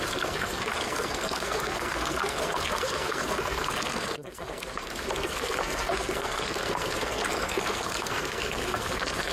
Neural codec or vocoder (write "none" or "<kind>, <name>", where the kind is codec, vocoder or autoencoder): codec, SNAC